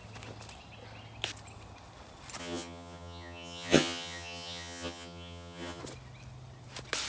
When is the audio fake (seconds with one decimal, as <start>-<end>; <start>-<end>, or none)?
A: 2.4-5.8